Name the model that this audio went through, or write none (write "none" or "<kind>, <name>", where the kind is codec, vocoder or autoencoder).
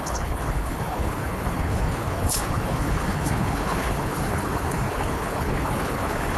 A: codec, HILCodec